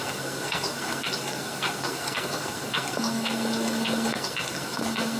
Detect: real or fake fake